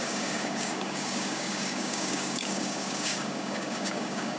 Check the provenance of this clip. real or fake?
fake